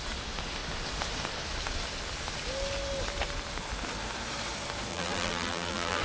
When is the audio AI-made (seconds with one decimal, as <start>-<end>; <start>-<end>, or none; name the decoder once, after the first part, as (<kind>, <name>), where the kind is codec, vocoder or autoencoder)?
4.9-6.0 (vocoder, BigVGAN v2)